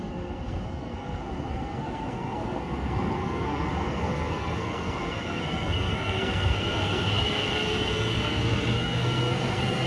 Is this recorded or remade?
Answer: remade